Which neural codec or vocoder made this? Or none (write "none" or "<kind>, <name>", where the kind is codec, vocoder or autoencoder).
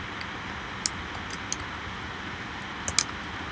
none